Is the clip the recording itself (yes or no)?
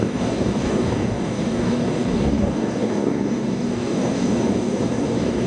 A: no